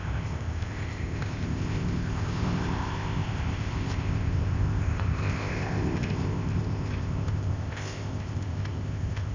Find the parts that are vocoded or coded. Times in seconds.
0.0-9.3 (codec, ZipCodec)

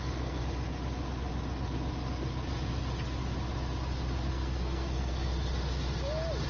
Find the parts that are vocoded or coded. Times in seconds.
0.0-0.4 (codec, SNAC); 4.3-5.3

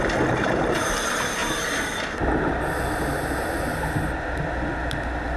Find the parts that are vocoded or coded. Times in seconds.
none

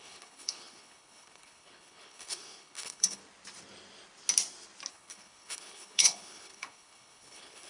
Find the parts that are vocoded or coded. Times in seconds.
0.0-3.2 (codec, HILCodec); 4.9-7.7

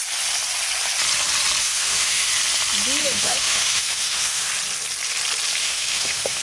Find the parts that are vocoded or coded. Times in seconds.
1.6-2.3 (autoencoder, DAC-VAE); 3.0-4.5; 5.6-6.4

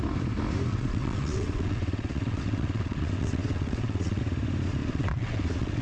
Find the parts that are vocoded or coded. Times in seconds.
0.7-4.2 (vocoder, WaveNeXt); 4.8-5.8

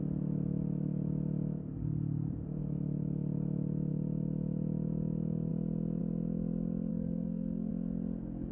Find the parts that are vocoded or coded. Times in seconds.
6.9-7.7 (codec, SNAC)